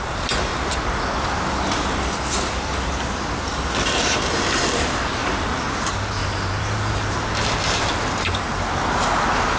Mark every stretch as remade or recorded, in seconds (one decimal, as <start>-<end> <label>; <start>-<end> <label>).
0.0-0.5 remade; 0.5-3.8 recorded; 3.8-5.2 remade; 5.2-5.7 recorded; 5.7-9.6 remade